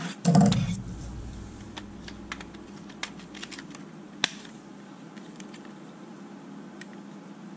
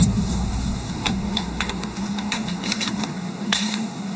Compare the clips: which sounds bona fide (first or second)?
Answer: first